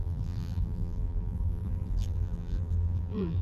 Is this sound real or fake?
fake